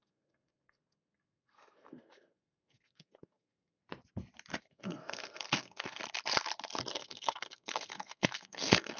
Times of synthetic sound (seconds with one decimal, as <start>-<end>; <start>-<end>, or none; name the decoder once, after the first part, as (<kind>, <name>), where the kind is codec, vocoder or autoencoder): 0.0-3.8 (codec, SNAC); 4.6-6.0; 6.9-9.0